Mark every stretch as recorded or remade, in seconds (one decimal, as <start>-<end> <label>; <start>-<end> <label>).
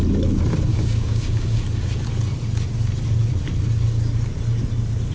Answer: 0.0-0.7 recorded; 0.7-1.6 remade; 1.6-5.1 recorded